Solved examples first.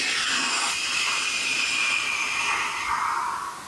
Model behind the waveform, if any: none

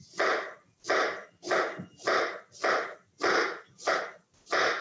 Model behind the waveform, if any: none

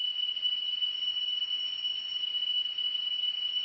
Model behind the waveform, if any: vocoder, Vocos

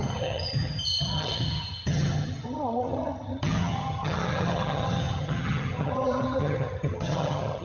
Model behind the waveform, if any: vocoder, HiFi-GAN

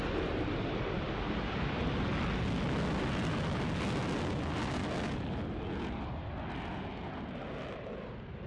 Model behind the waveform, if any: none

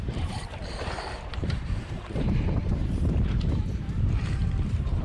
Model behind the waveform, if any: vocoder, BigVGAN v2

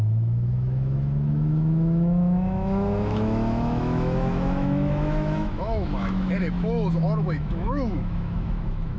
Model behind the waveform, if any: autoencoder, DAC-VAE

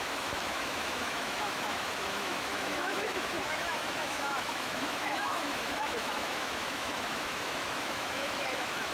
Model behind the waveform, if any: autoencoder, DAC-VAE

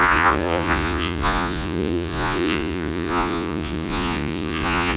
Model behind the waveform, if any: vocoder, Vocos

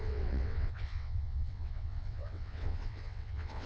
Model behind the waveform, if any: vocoder, WaveNeXt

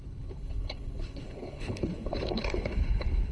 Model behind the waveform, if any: codec, HILCodec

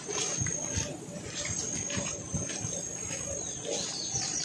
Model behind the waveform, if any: none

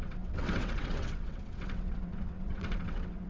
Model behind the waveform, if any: vocoder, WaveNeXt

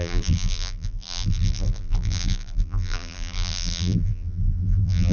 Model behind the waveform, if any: vocoder, BigVGAN v2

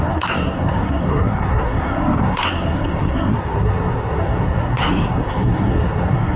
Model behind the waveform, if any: codec, SNAC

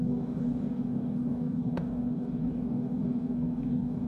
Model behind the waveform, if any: codec, DAC